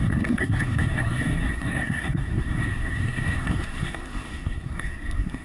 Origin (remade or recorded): remade